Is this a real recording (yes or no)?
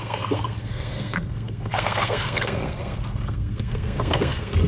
no